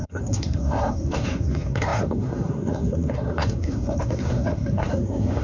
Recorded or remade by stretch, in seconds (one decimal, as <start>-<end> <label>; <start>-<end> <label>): 0.0-5.4 remade